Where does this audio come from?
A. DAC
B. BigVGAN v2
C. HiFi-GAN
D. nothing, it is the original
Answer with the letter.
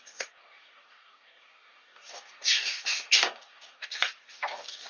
A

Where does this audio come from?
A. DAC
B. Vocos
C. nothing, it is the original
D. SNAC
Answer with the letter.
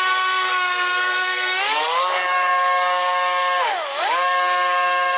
A